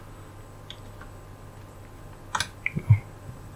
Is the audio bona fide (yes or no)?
yes